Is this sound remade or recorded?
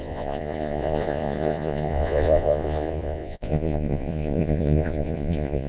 remade